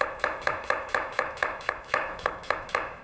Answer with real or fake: fake